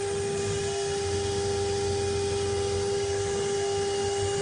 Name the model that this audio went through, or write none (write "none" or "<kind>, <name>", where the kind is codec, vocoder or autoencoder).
none